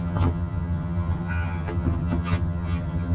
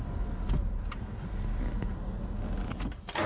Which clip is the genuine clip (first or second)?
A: second